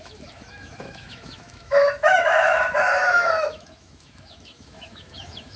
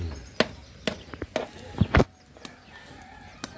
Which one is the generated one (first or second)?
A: first